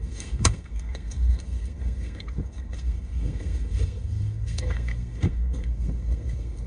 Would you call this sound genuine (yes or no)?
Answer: no